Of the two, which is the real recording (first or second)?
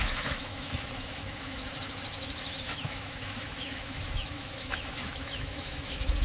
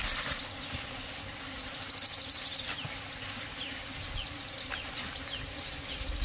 second